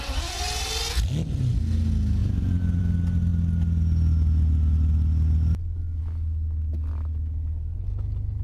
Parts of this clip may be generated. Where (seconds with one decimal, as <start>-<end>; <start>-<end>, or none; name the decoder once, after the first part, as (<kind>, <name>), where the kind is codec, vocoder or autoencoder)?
none